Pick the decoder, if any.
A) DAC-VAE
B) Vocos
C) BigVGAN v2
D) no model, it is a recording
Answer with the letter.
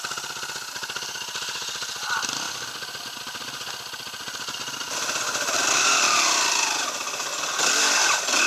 D